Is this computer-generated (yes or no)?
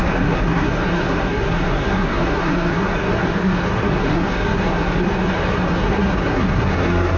yes